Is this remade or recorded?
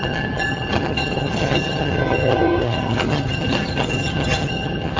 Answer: remade